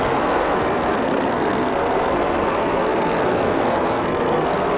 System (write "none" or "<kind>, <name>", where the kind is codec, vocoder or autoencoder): codec, SNAC